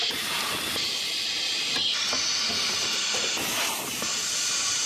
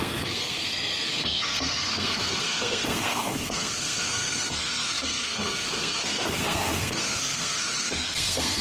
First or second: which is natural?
first